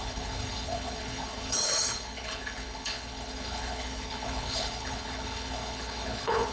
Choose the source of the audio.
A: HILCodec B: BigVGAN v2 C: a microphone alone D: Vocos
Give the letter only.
A